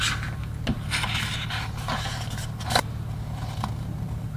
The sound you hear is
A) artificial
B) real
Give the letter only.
B